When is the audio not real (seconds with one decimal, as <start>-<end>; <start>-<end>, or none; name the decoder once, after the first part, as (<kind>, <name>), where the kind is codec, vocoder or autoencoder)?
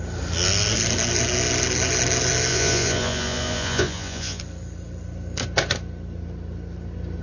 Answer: 2.5-4.4 (vocoder, Vocos)